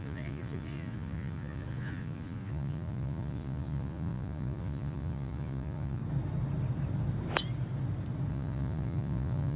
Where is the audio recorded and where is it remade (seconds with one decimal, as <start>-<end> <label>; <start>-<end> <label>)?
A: 0.0-6.0 remade; 6.0-8.3 recorded; 8.3-9.6 remade